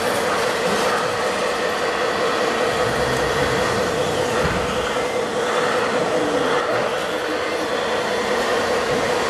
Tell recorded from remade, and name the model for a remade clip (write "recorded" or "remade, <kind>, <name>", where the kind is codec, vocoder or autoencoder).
recorded